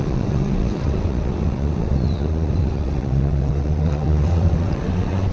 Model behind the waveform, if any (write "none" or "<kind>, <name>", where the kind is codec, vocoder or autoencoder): vocoder, WaveNeXt